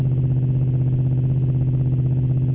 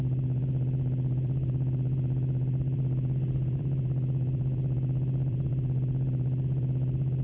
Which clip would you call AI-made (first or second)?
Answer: second